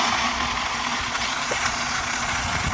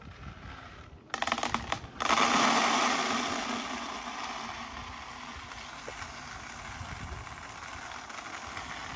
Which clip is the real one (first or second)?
second